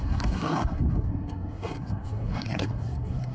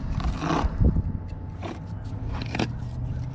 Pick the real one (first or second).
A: second